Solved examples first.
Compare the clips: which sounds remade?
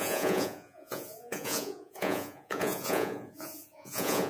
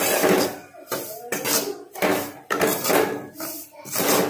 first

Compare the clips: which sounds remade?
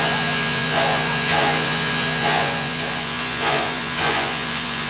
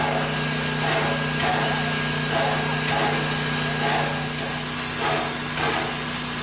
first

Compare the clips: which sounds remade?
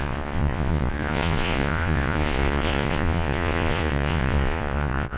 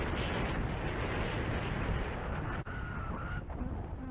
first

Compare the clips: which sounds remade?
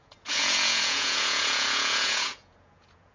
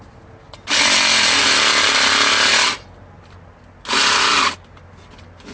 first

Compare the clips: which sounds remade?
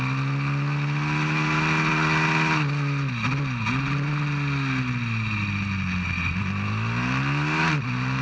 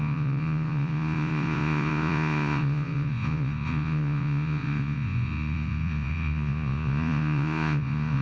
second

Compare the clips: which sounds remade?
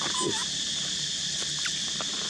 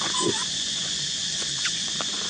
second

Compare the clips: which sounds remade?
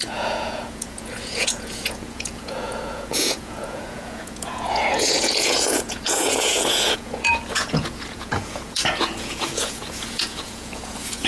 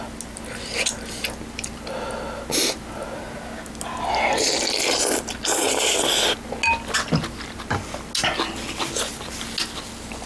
first